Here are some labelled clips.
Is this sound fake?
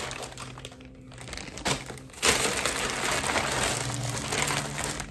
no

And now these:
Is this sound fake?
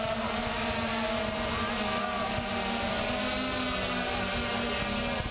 no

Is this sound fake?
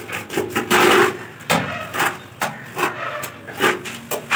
no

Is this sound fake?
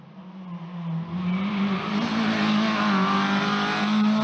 no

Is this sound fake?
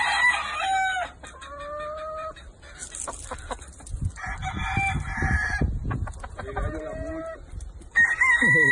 no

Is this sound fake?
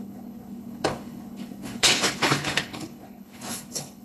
yes